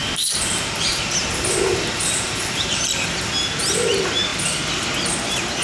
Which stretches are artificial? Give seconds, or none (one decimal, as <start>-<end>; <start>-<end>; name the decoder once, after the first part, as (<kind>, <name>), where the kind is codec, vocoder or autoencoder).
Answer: 0.0-3.4 (vocoder, BigVGAN v2)